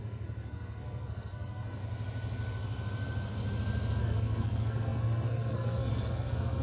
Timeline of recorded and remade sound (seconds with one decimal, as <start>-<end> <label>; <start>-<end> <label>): 0.0-1.8 remade; 1.8-4.0 recorded; 4.0-6.6 remade